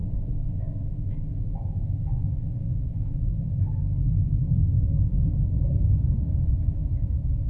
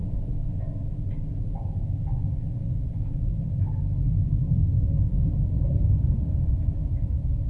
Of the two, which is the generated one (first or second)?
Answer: first